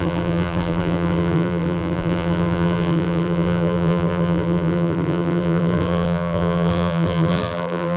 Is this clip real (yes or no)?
no